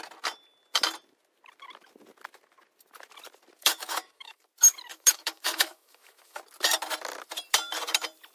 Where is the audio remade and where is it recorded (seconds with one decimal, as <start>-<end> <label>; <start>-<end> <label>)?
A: 0.0-3.6 recorded; 3.6-4.4 remade; 4.4-4.9 recorded; 4.9-6.4 remade; 6.4-8.3 recorded